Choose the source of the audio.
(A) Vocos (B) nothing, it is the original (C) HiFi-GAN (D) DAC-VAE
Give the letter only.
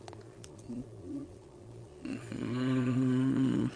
A